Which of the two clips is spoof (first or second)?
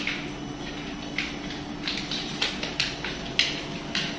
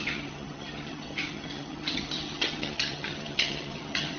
second